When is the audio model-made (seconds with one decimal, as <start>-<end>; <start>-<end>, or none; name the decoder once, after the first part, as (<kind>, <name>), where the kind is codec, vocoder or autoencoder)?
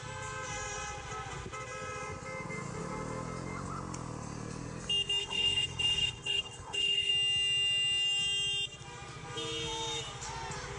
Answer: 5.2-7.1 (codec, HILCodec)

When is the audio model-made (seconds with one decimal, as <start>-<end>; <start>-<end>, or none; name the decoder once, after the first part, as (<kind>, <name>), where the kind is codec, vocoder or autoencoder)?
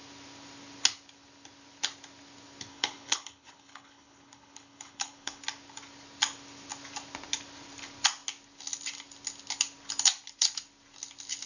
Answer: 2.7-5.4 (codec, HILCodec)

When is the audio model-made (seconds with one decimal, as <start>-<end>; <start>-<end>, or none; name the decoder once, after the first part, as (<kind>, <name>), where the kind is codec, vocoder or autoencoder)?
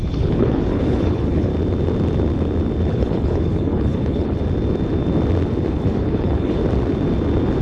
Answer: 0.0-1.5 (codec, HILCodec); 2.9-4.4; 5.7-6.6